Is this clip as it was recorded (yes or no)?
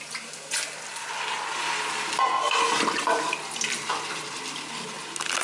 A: yes